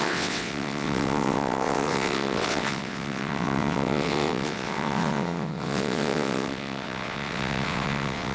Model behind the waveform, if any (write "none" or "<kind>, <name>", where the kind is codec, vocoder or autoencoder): vocoder, WaveNeXt